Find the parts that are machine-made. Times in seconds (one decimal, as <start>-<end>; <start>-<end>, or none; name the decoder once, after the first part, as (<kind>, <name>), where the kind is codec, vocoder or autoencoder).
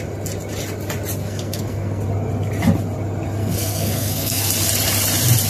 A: 1.2-2.0 (codec, SNAC); 3.4-4.5